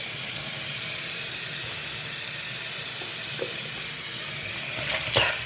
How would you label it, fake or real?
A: real